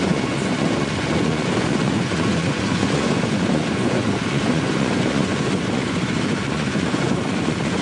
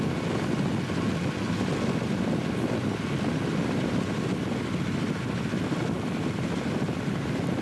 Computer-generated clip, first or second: first